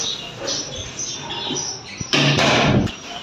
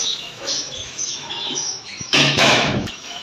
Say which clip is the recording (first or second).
first